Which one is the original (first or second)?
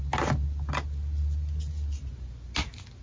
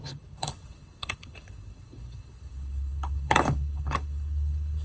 first